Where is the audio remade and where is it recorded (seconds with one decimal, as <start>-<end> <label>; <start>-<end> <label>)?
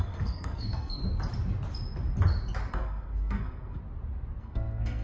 0.0-1.0 remade; 1.0-2.7 recorded; 2.7-3.8 remade; 3.8-4.4 recorded; 4.4-5.0 remade